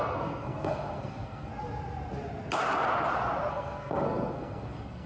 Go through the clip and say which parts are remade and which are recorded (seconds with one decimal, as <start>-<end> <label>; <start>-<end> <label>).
0.0-1.5 remade; 1.5-3.5 recorded; 3.5-5.1 remade